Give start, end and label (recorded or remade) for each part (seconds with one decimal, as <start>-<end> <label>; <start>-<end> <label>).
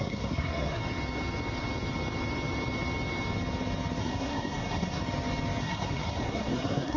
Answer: 0.0-0.8 remade; 0.8-4.0 recorded; 4.0-5.0 remade; 5.0-5.6 recorded; 5.6-7.0 remade